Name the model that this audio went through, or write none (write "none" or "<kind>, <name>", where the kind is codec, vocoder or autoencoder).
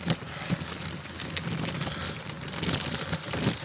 none